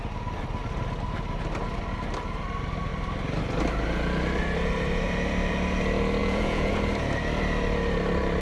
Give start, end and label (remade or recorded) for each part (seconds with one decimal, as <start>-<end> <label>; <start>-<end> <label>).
0.0-6.2 recorded; 6.2-6.7 remade; 6.7-8.4 recorded